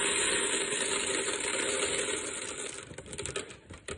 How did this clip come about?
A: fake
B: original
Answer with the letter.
B